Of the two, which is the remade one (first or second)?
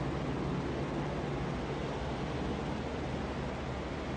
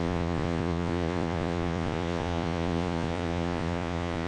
second